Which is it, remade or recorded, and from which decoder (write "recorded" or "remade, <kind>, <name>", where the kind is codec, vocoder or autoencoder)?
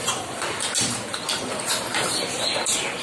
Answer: remade, vocoder, BigVGAN v2